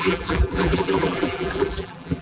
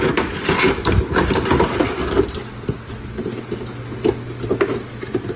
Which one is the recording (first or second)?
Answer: second